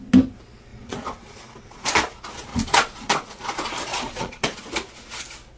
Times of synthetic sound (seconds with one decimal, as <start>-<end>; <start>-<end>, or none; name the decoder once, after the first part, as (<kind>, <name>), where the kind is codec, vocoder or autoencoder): 0.7-1.9 (vocoder, Vocos); 2.5-3.5; 3.9-4.7